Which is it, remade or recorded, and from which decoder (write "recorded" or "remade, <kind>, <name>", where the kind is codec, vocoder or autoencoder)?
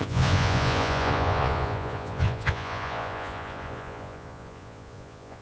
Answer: remade, vocoder, Vocos